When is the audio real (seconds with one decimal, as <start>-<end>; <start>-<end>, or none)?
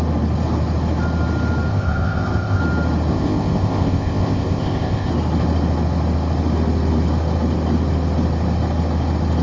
0.0-1.7; 2.6-3.1; 5.1-9.4